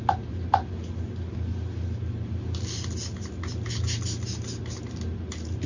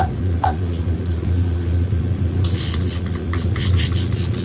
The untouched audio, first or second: first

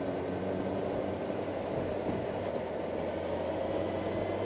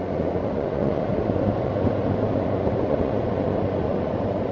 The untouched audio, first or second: first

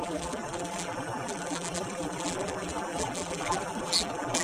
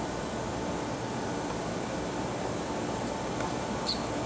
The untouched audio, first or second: second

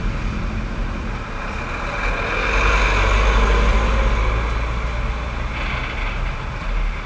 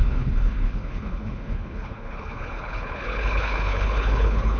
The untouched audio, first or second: first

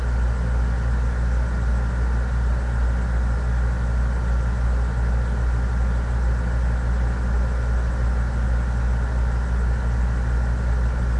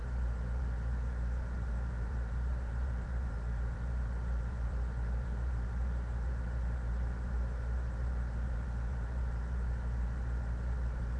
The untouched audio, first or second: first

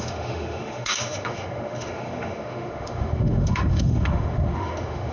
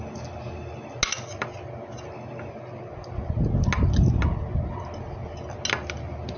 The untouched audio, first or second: second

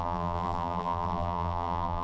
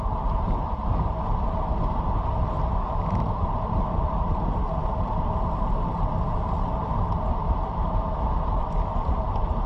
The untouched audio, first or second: second